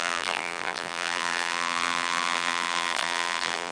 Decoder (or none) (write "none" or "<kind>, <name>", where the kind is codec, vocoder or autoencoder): vocoder, BigVGAN v2